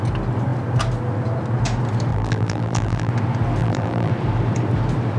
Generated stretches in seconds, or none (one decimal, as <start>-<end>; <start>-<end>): 2.1-3.1; 3.6-4.1